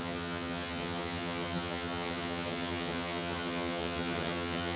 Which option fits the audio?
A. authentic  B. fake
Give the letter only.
B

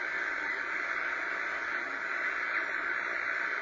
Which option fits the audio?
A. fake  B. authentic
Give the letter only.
B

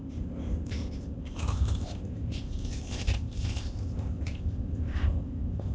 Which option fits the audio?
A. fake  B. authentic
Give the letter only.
A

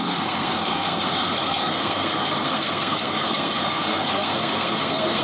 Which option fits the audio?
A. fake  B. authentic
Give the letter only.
A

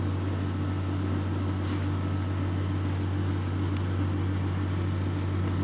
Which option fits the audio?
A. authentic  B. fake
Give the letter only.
A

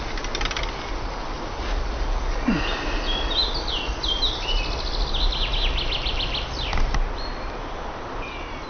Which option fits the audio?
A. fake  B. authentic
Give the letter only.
B